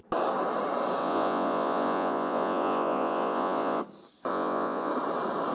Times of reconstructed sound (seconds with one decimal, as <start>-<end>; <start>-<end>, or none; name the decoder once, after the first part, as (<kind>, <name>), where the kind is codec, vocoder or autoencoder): 1.0-3.8 (vocoder, Vocos); 4.3-4.9